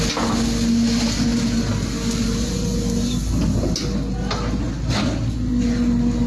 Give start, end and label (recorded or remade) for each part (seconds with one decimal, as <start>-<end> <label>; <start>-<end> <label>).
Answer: 0.0-6.3 recorded